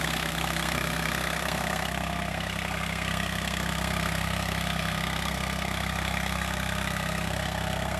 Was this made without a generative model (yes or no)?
no